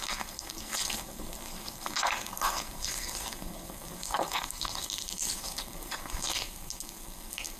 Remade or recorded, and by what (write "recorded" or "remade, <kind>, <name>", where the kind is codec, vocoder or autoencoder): remade, codec, SNAC